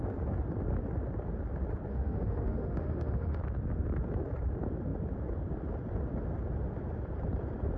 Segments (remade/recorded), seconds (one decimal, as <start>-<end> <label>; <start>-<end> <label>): 0.0-1.9 recorded; 1.9-3.4 remade; 3.4-7.8 recorded